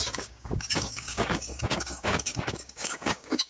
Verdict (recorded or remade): remade